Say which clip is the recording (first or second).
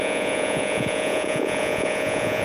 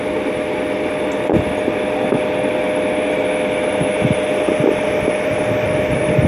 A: second